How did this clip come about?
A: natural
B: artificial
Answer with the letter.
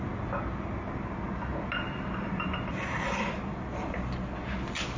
A